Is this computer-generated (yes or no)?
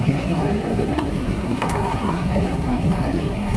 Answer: yes